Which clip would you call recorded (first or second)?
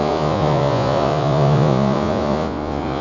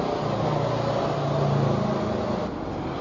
second